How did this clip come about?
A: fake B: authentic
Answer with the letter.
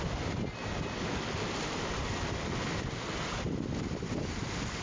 B